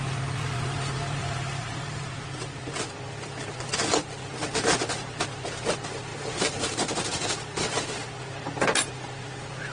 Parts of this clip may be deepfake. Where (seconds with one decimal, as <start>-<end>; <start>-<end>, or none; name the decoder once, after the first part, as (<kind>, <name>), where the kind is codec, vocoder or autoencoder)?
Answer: 1.2-2.0 (vocoder, BigVGAN v2); 6.1-7.9